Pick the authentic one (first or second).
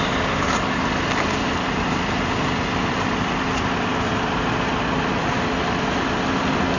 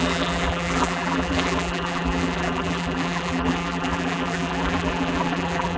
first